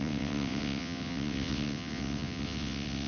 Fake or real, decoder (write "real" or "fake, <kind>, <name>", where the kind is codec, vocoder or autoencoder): fake, vocoder, WaveNeXt